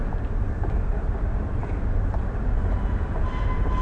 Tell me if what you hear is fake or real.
real